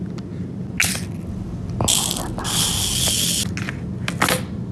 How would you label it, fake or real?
real